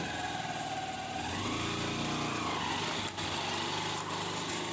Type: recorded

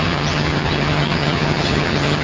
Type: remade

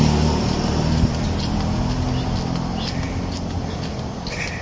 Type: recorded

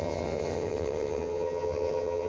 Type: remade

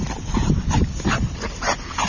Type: recorded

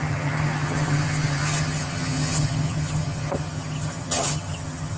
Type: remade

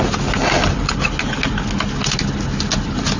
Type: recorded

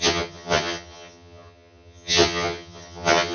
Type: remade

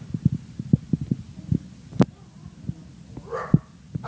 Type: recorded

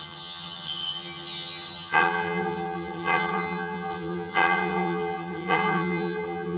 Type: remade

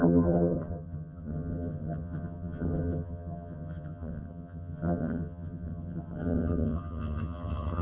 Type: remade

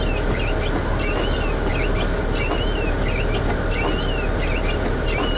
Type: recorded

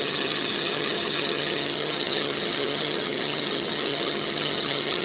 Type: remade